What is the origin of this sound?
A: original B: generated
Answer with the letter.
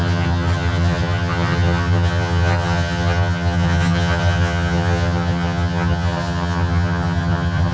B